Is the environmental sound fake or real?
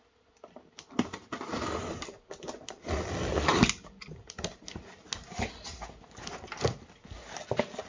real